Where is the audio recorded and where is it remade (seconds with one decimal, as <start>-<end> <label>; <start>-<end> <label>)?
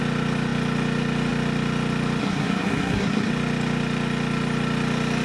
0.0-2.2 recorded; 2.2-3.3 remade; 3.3-5.2 recorded